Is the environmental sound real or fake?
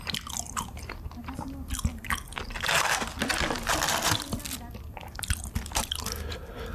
real